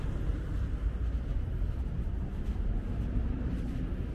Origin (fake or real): real